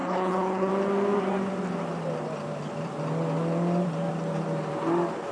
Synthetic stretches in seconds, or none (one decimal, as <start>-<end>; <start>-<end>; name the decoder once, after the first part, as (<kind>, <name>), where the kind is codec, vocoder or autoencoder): 0.0-0.7 (codec, HILCodec)